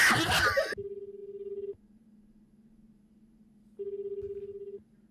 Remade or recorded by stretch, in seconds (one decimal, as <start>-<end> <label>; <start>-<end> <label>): 0.0-5.1 recorded